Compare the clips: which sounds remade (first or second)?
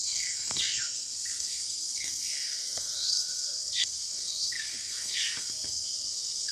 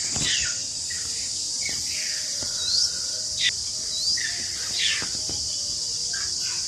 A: first